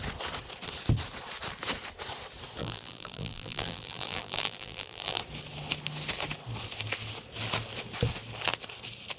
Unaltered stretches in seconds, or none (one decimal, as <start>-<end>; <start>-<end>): 0.0-2.6; 5.2-9.2